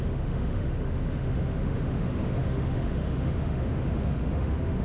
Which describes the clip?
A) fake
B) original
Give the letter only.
A